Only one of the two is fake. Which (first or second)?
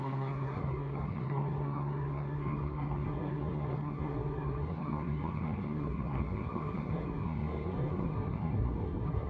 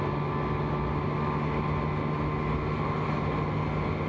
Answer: first